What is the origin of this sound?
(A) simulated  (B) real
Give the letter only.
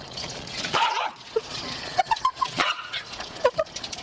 A